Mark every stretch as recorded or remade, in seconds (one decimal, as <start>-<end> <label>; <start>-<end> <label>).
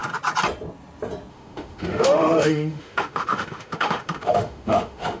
0.0-1.3 recorded; 1.3-5.2 remade